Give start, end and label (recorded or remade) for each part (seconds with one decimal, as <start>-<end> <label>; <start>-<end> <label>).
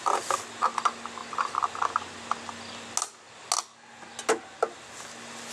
0.0-5.5 recorded